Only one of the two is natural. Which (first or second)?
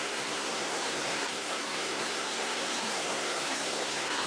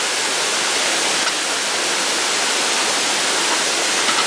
second